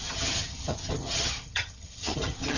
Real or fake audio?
fake